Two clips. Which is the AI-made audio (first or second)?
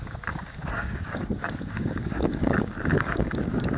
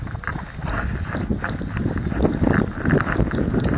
first